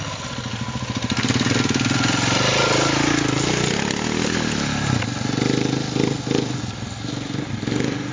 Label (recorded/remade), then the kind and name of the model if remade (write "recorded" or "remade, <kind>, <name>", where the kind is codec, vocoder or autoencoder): recorded